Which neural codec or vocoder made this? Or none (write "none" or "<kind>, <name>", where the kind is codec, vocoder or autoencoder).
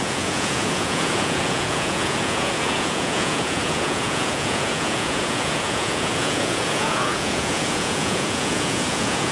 vocoder, Vocos